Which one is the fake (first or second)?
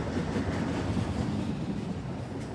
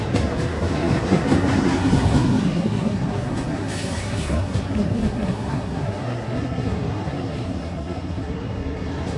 second